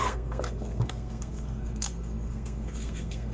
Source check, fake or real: fake